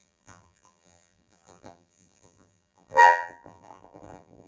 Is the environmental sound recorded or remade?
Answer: remade